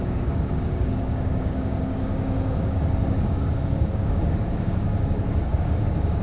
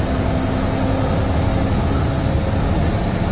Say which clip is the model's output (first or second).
first